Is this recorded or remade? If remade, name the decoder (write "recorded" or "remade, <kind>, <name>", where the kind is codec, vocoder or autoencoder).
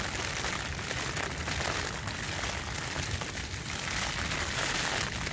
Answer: recorded